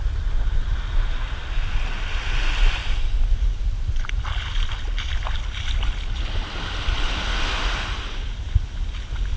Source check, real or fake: real